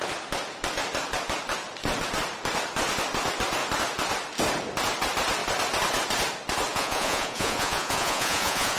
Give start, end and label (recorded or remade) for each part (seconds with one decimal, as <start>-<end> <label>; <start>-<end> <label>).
0.0-6.7 recorded; 6.7-8.8 remade